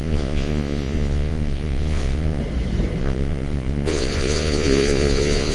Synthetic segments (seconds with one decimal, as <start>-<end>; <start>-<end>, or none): 0.0-2.4; 3.0-5.5